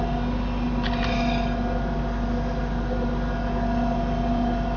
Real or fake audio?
real